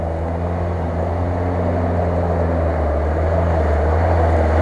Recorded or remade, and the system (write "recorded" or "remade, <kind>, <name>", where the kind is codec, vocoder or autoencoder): recorded